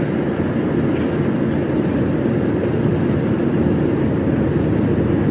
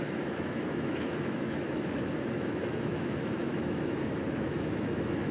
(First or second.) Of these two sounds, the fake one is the second